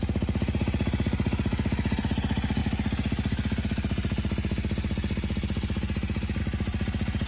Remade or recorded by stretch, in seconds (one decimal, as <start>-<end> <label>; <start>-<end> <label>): 0.0-7.3 recorded